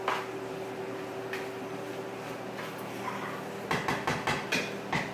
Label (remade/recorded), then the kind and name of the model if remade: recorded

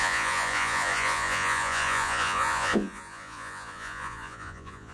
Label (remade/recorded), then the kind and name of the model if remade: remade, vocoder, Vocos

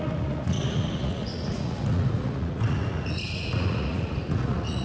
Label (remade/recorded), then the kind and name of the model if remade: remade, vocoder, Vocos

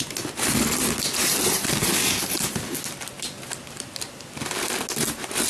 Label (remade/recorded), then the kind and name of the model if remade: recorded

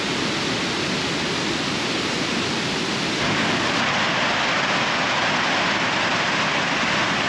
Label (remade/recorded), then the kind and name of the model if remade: recorded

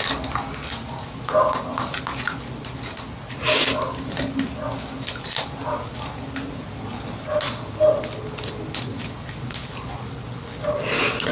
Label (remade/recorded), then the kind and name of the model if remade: recorded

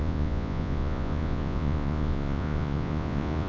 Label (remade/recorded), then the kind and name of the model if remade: remade, vocoder, Vocos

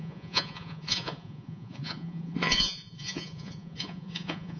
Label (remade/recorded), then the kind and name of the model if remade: remade, vocoder, Vocos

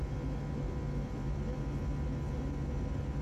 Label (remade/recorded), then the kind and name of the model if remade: recorded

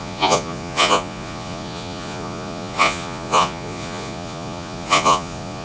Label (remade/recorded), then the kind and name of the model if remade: remade, vocoder, Vocos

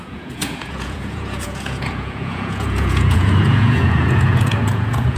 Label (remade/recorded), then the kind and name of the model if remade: remade, vocoder, Vocos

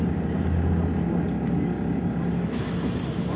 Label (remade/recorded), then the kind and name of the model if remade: recorded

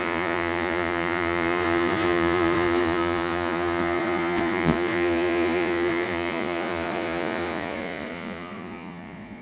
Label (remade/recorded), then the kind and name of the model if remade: remade, vocoder, Vocos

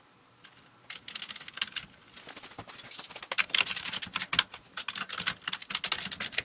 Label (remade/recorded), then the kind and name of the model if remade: recorded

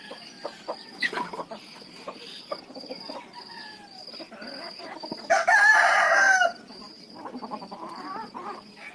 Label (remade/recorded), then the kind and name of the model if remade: recorded